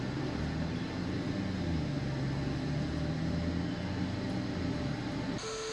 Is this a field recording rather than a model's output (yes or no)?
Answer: yes